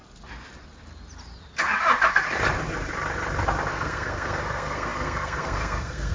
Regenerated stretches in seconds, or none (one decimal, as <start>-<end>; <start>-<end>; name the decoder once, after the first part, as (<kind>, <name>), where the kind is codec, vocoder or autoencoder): 3.7-6.1 (codec, SNAC)